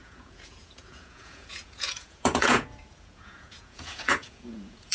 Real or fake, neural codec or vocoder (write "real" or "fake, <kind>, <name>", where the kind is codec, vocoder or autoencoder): fake, vocoder, Vocos